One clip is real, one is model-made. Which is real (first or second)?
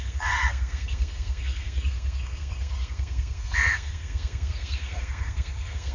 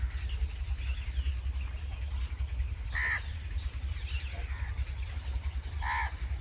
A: second